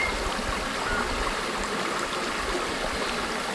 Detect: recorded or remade recorded